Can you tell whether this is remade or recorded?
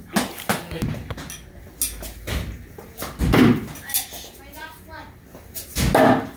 recorded